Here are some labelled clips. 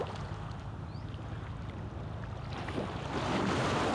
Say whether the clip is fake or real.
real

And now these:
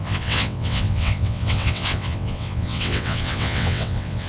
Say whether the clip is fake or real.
fake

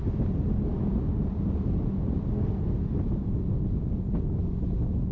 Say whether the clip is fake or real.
real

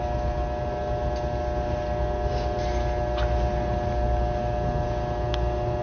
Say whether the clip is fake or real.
real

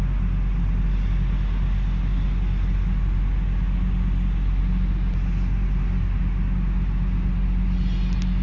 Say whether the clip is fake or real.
real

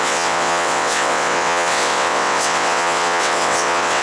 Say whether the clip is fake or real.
fake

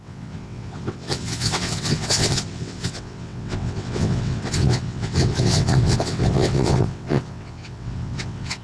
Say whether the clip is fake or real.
fake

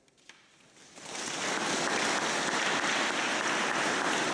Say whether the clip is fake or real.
real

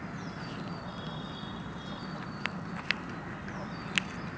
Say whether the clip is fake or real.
real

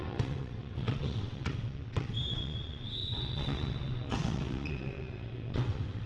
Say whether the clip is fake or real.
fake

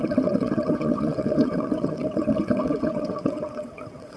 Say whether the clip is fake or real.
fake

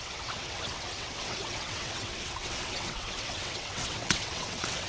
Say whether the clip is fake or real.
fake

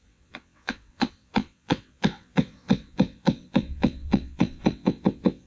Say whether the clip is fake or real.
fake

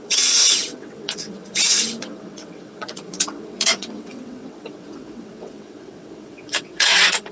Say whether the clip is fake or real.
fake